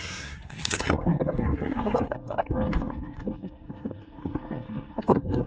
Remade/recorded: remade